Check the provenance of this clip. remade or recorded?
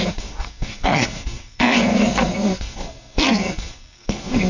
remade